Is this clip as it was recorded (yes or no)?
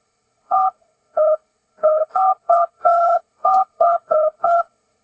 no